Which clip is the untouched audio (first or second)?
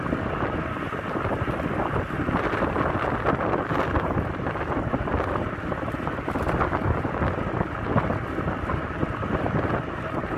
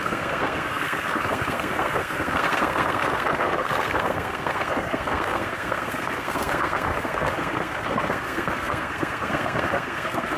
first